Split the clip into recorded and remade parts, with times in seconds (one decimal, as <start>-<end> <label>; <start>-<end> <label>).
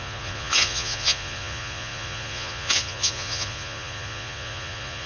0.0-5.1 remade